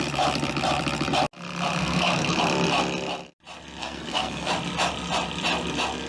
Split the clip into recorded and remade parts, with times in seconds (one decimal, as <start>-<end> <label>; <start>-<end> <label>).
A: 0.0-1.8 recorded; 1.8-2.4 remade; 2.4-3.8 recorded; 3.8-4.5 remade; 4.5-6.1 recorded